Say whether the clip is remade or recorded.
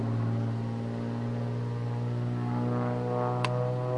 recorded